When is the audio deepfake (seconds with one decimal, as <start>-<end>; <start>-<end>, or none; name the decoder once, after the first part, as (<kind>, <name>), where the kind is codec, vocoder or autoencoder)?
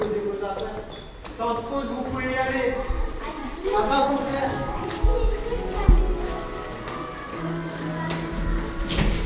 3.4-4.7 (codec, DAC); 7.3-7.9